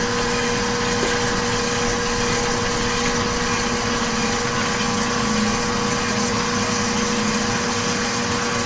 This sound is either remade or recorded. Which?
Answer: recorded